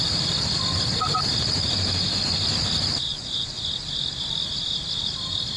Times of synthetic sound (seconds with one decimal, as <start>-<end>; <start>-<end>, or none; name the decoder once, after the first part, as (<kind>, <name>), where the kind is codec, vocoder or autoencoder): 3.1-3.7 (vocoder, Vocos)